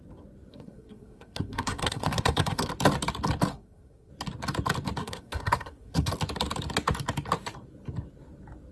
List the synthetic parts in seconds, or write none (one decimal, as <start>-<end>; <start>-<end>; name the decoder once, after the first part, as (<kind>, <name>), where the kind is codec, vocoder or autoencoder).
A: 0.5-2.7 (codec, SNAC); 3.5-4.1; 5.0-6.1